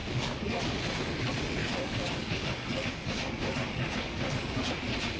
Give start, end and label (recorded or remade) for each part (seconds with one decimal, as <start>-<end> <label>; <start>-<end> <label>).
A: 0.0-0.8 remade; 0.8-1.6 recorded; 1.6-4.7 remade; 4.7-5.2 recorded